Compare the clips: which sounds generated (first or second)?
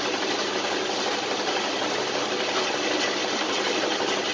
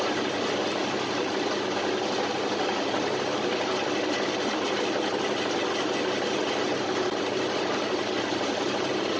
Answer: second